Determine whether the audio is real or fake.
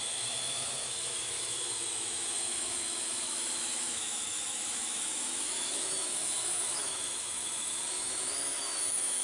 fake